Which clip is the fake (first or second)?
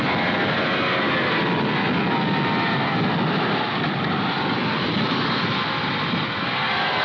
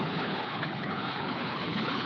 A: second